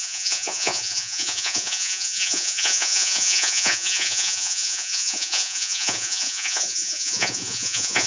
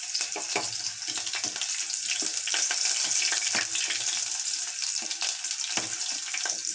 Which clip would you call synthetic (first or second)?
first